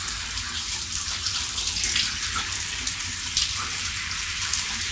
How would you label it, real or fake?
fake